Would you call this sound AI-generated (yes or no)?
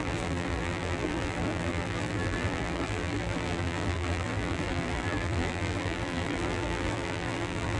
yes